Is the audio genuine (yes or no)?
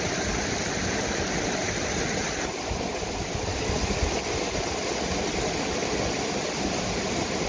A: yes